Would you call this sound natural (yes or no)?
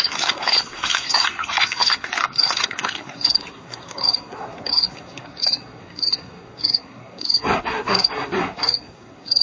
no